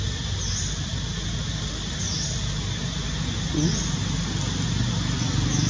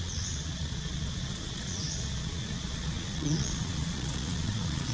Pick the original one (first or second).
first